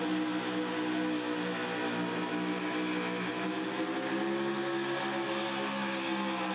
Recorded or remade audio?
recorded